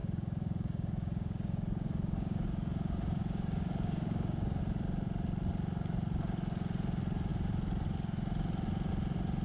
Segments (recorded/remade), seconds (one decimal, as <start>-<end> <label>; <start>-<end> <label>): 0.0-4.6 remade; 4.6-9.4 recorded